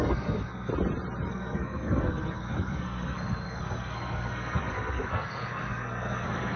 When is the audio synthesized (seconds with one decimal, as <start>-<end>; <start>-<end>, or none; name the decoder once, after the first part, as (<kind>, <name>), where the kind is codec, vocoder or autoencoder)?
0.0-0.7 (codec, SNAC); 1.3-6.6